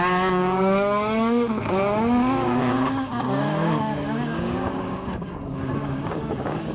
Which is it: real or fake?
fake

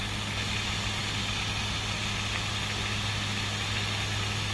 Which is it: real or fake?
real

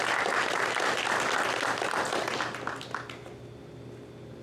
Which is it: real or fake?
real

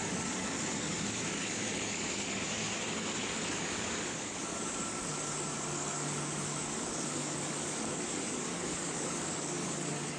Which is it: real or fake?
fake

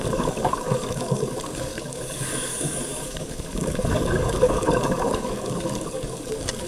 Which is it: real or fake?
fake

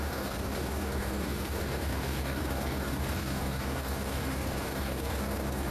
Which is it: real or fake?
fake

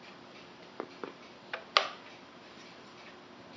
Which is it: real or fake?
real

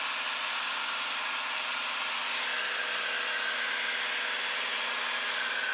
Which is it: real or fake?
real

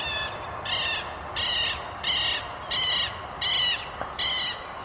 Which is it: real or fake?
real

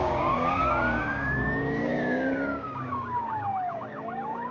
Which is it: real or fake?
fake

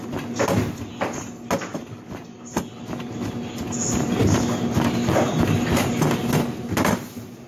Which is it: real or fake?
real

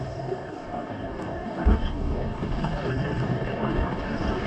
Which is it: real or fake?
fake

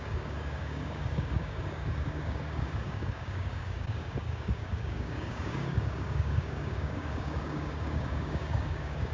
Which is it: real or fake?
fake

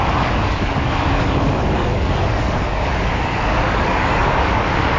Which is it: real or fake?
fake